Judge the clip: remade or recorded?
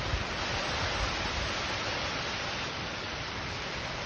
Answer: recorded